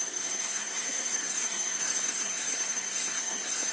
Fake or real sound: fake